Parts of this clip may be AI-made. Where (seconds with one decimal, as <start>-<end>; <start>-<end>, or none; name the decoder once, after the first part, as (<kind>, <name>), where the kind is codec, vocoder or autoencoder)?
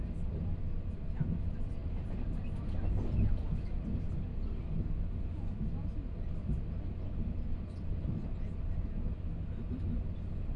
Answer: none